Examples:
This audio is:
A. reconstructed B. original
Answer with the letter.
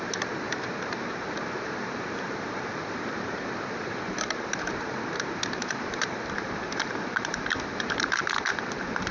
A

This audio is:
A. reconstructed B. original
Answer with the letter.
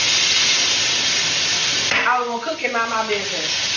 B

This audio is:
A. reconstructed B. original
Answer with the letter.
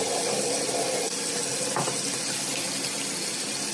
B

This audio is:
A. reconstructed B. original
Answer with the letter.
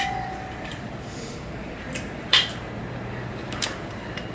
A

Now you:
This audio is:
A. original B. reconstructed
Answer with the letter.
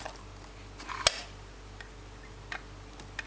A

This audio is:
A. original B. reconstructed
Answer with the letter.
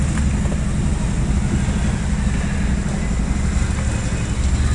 A